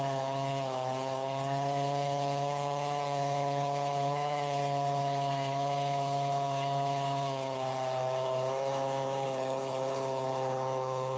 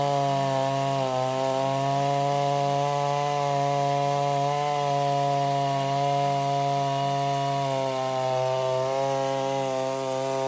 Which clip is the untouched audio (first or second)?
second